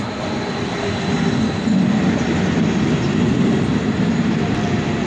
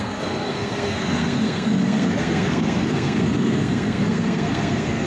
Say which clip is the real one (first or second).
first